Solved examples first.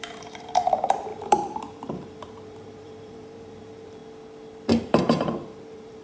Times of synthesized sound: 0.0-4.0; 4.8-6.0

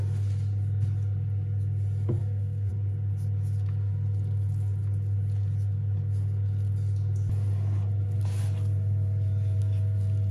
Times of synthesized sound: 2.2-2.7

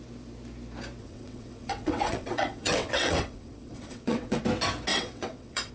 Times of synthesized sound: 1.0-4.4; 4.9-5.7

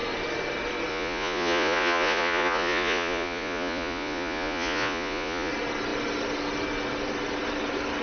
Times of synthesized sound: 0.9-5.5